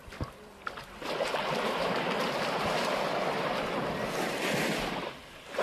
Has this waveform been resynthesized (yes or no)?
no